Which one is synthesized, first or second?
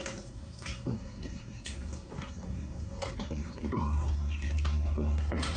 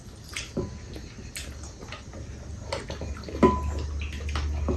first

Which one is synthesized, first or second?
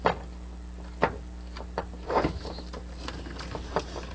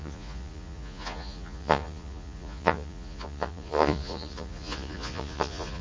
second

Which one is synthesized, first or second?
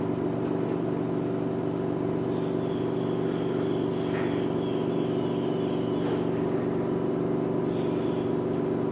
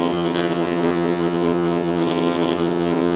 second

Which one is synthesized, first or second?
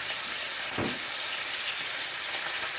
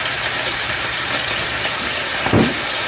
second